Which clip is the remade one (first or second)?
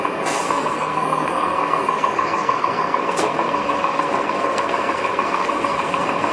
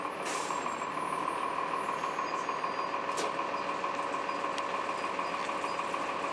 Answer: first